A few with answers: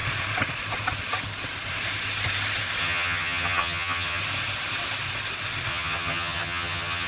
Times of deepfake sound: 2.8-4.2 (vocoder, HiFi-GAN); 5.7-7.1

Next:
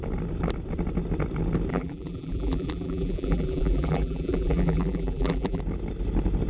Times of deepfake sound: 1.7-5.6 (vocoder, BigVGAN v2)

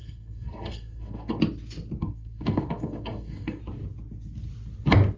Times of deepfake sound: 0.0-1.4 (codec, SNAC); 2.0-3.6

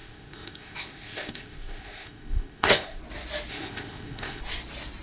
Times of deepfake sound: 0.0-3.0 (codec, ZipCodec); 3.5-4.4

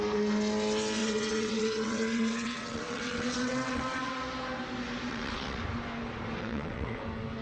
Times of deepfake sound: 1.0-4.1 (vocoder, WaveNeXt); 5.1-5.6; 6.4-7.0